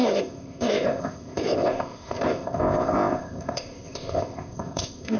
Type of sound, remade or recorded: remade